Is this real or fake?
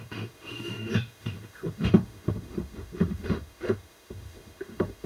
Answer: fake